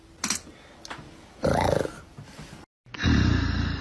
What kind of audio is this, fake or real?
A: real